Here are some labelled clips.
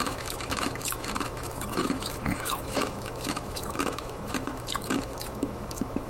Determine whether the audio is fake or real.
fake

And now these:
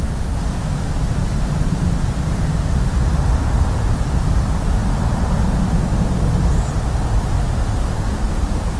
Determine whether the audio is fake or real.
real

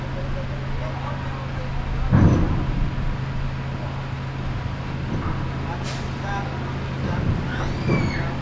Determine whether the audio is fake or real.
real